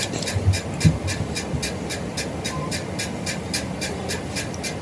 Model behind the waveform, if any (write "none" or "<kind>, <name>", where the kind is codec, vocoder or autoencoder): none